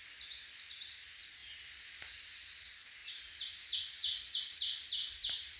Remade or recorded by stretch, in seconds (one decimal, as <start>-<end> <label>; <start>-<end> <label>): 0.0-5.6 recorded